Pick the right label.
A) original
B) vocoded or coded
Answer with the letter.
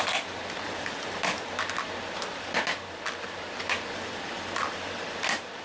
A